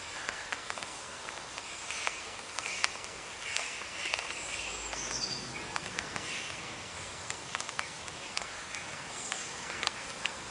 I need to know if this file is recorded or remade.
remade